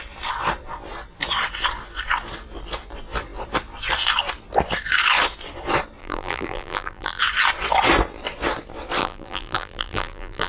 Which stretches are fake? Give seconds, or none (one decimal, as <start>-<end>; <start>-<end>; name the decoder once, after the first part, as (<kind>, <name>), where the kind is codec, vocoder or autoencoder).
6.0-7.2 (vocoder, BigVGAN v2); 9.0-10.5